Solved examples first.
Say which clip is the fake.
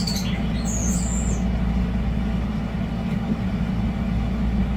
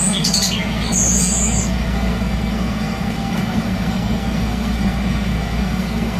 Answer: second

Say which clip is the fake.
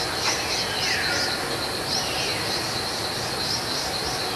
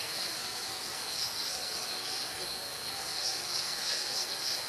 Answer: second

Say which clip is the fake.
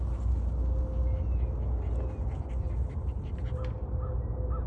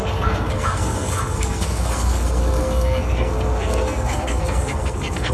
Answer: second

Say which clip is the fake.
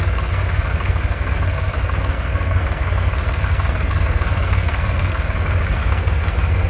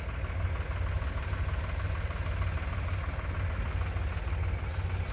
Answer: first